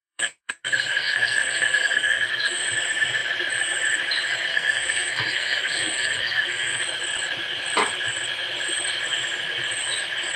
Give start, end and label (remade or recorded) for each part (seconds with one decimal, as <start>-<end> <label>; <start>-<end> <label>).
0.0-2.6 remade; 2.6-4.5 recorded; 4.5-6.8 remade; 6.8-10.4 recorded